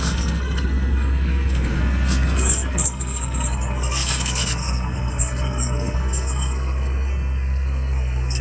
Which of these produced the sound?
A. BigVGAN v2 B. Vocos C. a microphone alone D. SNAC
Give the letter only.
D